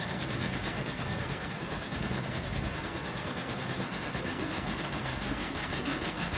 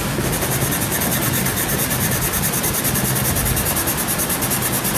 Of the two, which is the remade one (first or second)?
first